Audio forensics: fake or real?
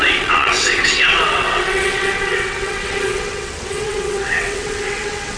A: fake